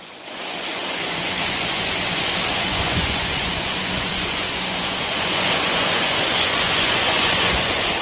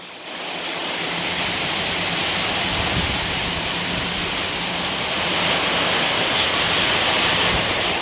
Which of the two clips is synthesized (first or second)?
first